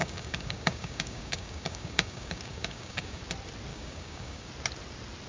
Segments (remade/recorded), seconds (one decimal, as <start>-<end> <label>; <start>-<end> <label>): 0.0-3.2 remade; 3.2-3.7 recorded; 3.7-4.5 remade; 4.5-5.3 recorded